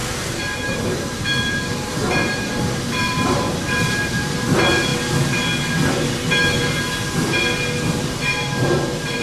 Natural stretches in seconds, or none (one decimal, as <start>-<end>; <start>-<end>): 4.9-8.0